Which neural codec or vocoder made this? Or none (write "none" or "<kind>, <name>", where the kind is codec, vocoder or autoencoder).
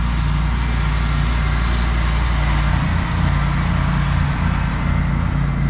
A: none